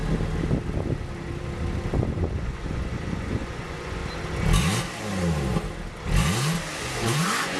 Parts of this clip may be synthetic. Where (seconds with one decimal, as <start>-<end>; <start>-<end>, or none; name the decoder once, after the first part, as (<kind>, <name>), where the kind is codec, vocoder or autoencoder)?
2.1-4.0 (vocoder, Vocos); 6.8-7.6